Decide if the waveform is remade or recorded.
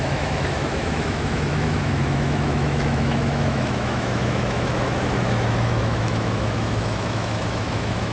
remade